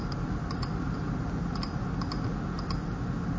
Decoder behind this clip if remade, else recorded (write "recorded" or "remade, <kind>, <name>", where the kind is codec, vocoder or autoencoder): recorded